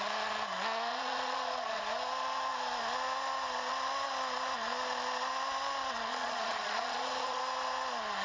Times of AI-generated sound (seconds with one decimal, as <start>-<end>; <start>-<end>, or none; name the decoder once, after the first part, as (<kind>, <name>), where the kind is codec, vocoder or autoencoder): 0.9-1.8 (vocoder, Vocos); 6.1-7.4